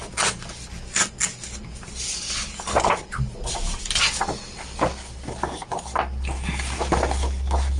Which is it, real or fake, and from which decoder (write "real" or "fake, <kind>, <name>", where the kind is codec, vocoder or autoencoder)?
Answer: real